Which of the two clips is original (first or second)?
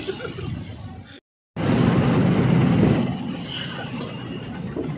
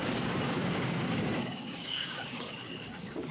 first